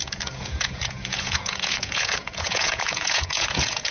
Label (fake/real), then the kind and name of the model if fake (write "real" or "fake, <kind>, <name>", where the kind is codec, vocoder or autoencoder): fake, vocoder, Vocos